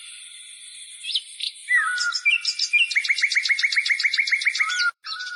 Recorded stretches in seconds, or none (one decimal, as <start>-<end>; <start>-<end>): 1.6-4.8